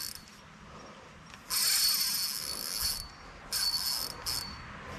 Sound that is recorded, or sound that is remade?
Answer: recorded